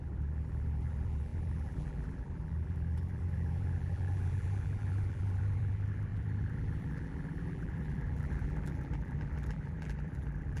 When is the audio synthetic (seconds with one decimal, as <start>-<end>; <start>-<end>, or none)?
0.0-10.6